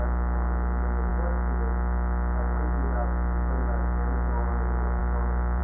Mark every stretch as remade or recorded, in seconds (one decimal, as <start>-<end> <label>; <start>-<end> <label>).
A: 0.0-5.6 recorded